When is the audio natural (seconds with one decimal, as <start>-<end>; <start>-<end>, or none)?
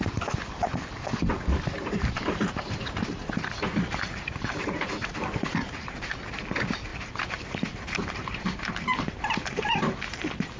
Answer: 0.0-1.3; 6.1-6.9; 10.0-10.6